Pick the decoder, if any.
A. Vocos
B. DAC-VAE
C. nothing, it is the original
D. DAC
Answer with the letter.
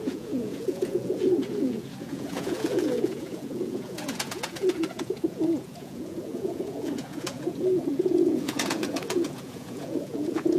A